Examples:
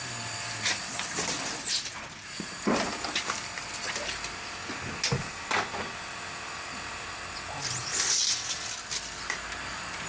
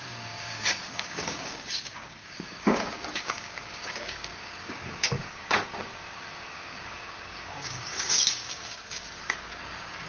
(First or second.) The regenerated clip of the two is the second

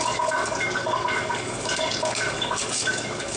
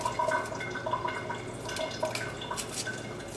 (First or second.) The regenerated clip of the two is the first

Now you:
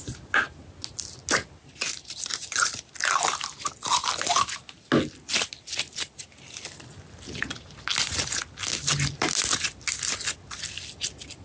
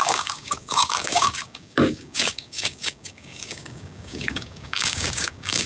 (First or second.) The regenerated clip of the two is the second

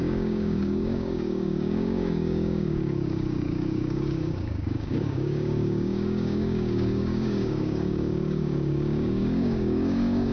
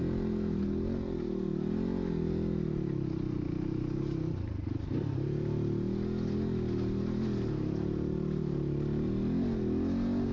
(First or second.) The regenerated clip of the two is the first